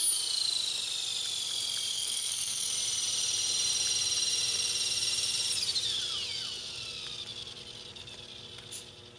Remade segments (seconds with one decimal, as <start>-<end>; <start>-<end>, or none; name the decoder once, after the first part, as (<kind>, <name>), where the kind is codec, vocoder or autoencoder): 1.9-2.7 (codec, SNAC)